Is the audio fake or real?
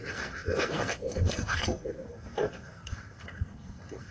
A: fake